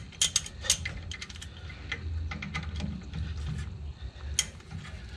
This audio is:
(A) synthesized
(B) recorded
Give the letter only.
B